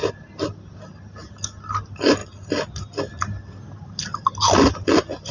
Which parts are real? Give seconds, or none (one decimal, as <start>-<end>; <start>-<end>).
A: 0.0-5.3